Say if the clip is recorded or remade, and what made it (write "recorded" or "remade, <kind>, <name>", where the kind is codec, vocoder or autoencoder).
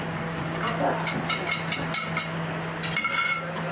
recorded